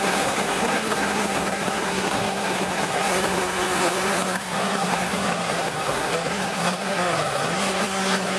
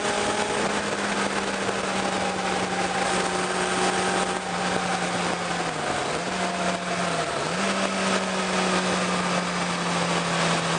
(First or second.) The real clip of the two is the second